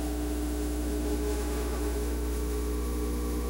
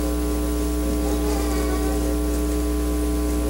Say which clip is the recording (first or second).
second